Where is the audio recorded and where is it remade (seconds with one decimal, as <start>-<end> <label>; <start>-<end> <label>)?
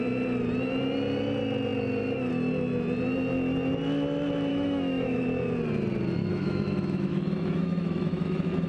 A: 0.0-4.5 recorded; 4.5-5.2 remade; 5.2-6.3 recorded; 6.3-8.7 remade